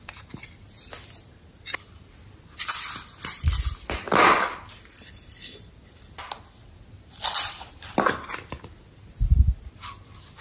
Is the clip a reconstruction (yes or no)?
no